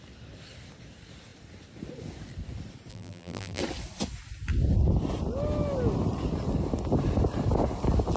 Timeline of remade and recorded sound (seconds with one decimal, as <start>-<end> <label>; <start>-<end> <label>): 0.0-2.9 recorded; 2.9-3.6 remade; 3.6-8.2 recorded